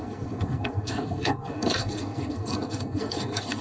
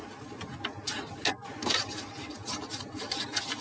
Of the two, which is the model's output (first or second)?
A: first